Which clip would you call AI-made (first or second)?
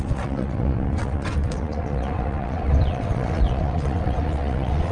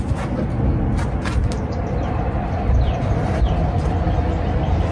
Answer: first